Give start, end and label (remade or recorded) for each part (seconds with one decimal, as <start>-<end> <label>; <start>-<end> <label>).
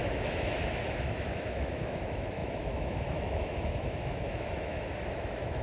0.0-5.6 remade